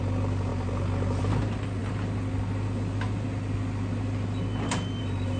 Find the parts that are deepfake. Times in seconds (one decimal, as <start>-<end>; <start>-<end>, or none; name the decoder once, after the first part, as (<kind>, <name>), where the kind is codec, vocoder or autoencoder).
none